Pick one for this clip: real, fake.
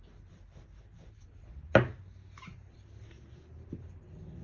real